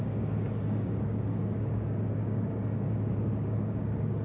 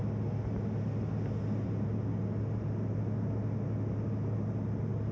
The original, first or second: second